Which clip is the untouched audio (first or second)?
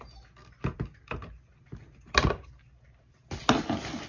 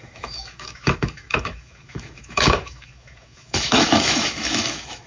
first